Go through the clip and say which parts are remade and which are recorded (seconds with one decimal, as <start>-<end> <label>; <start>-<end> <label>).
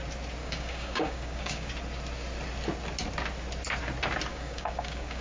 0.0-0.4 recorded; 0.4-1.7 remade; 1.7-4.3 recorded; 4.3-5.2 remade